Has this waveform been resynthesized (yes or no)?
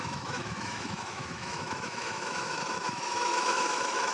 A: yes